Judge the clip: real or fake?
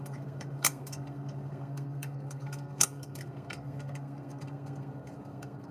fake